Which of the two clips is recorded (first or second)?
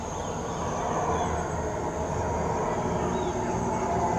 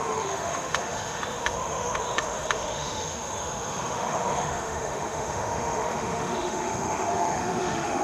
first